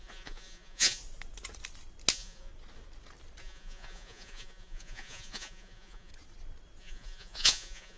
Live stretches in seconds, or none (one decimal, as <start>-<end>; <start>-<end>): 1.0-2.1; 2.5-3.4; 6.1-6.8